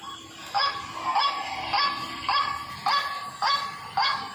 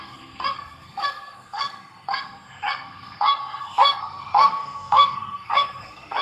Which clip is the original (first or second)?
first